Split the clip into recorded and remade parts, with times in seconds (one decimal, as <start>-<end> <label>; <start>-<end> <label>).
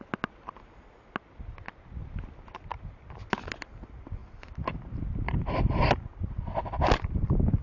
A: 0.0-7.6 recorded